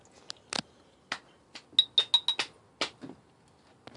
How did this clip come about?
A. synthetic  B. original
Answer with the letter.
B